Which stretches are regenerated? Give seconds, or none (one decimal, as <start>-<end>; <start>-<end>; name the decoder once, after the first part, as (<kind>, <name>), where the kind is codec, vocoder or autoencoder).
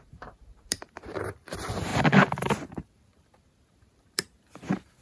0.0-5.0 (vocoder, BigVGAN v2)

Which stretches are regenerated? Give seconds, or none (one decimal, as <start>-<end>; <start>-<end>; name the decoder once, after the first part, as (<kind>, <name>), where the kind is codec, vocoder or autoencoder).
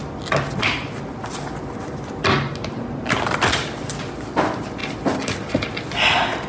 none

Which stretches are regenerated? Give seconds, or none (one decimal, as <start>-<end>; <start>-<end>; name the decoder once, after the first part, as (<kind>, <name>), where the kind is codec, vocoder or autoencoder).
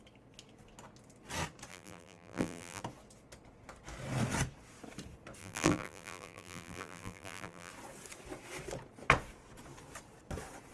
1.7-2.8 (vocoder, BigVGAN v2); 5.4-7.7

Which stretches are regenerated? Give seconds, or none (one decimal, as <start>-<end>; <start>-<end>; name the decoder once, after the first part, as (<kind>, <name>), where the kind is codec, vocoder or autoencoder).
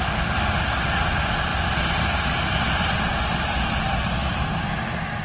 1.5-3.8 (vocoder, BigVGAN v2); 4.2-4.7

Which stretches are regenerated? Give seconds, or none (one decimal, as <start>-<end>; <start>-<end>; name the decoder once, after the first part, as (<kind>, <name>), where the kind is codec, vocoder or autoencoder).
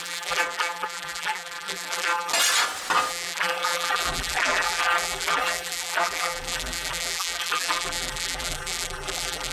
0.0-2.3 (vocoder, BigVGAN v2); 3.1-9.5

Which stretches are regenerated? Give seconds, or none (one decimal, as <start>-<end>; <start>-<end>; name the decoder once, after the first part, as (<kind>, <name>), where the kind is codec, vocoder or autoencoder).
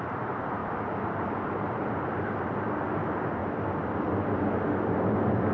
0.6-2.0 (vocoder, BigVGAN v2)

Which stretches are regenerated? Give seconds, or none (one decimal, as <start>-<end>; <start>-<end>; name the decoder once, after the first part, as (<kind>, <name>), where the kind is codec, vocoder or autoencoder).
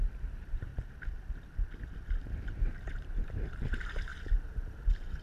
0.0-0.7 (vocoder, BigVGAN v2); 2.2-5.2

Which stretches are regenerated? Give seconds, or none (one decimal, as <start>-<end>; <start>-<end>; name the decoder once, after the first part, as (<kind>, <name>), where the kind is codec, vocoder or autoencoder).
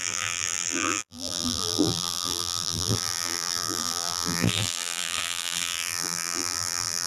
0.0-7.1 (vocoder, BigVGAN v2)